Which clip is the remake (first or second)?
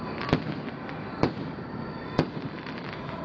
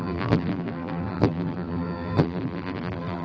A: second